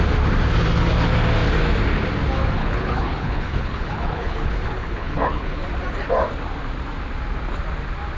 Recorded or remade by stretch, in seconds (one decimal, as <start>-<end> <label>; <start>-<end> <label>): 0.0-2.6 recorded; 2.6-5.6 remade; 5.6-8.2 recorded